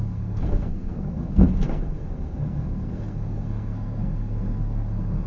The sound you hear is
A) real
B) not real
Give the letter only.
B